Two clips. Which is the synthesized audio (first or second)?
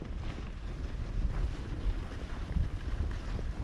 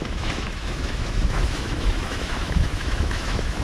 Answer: second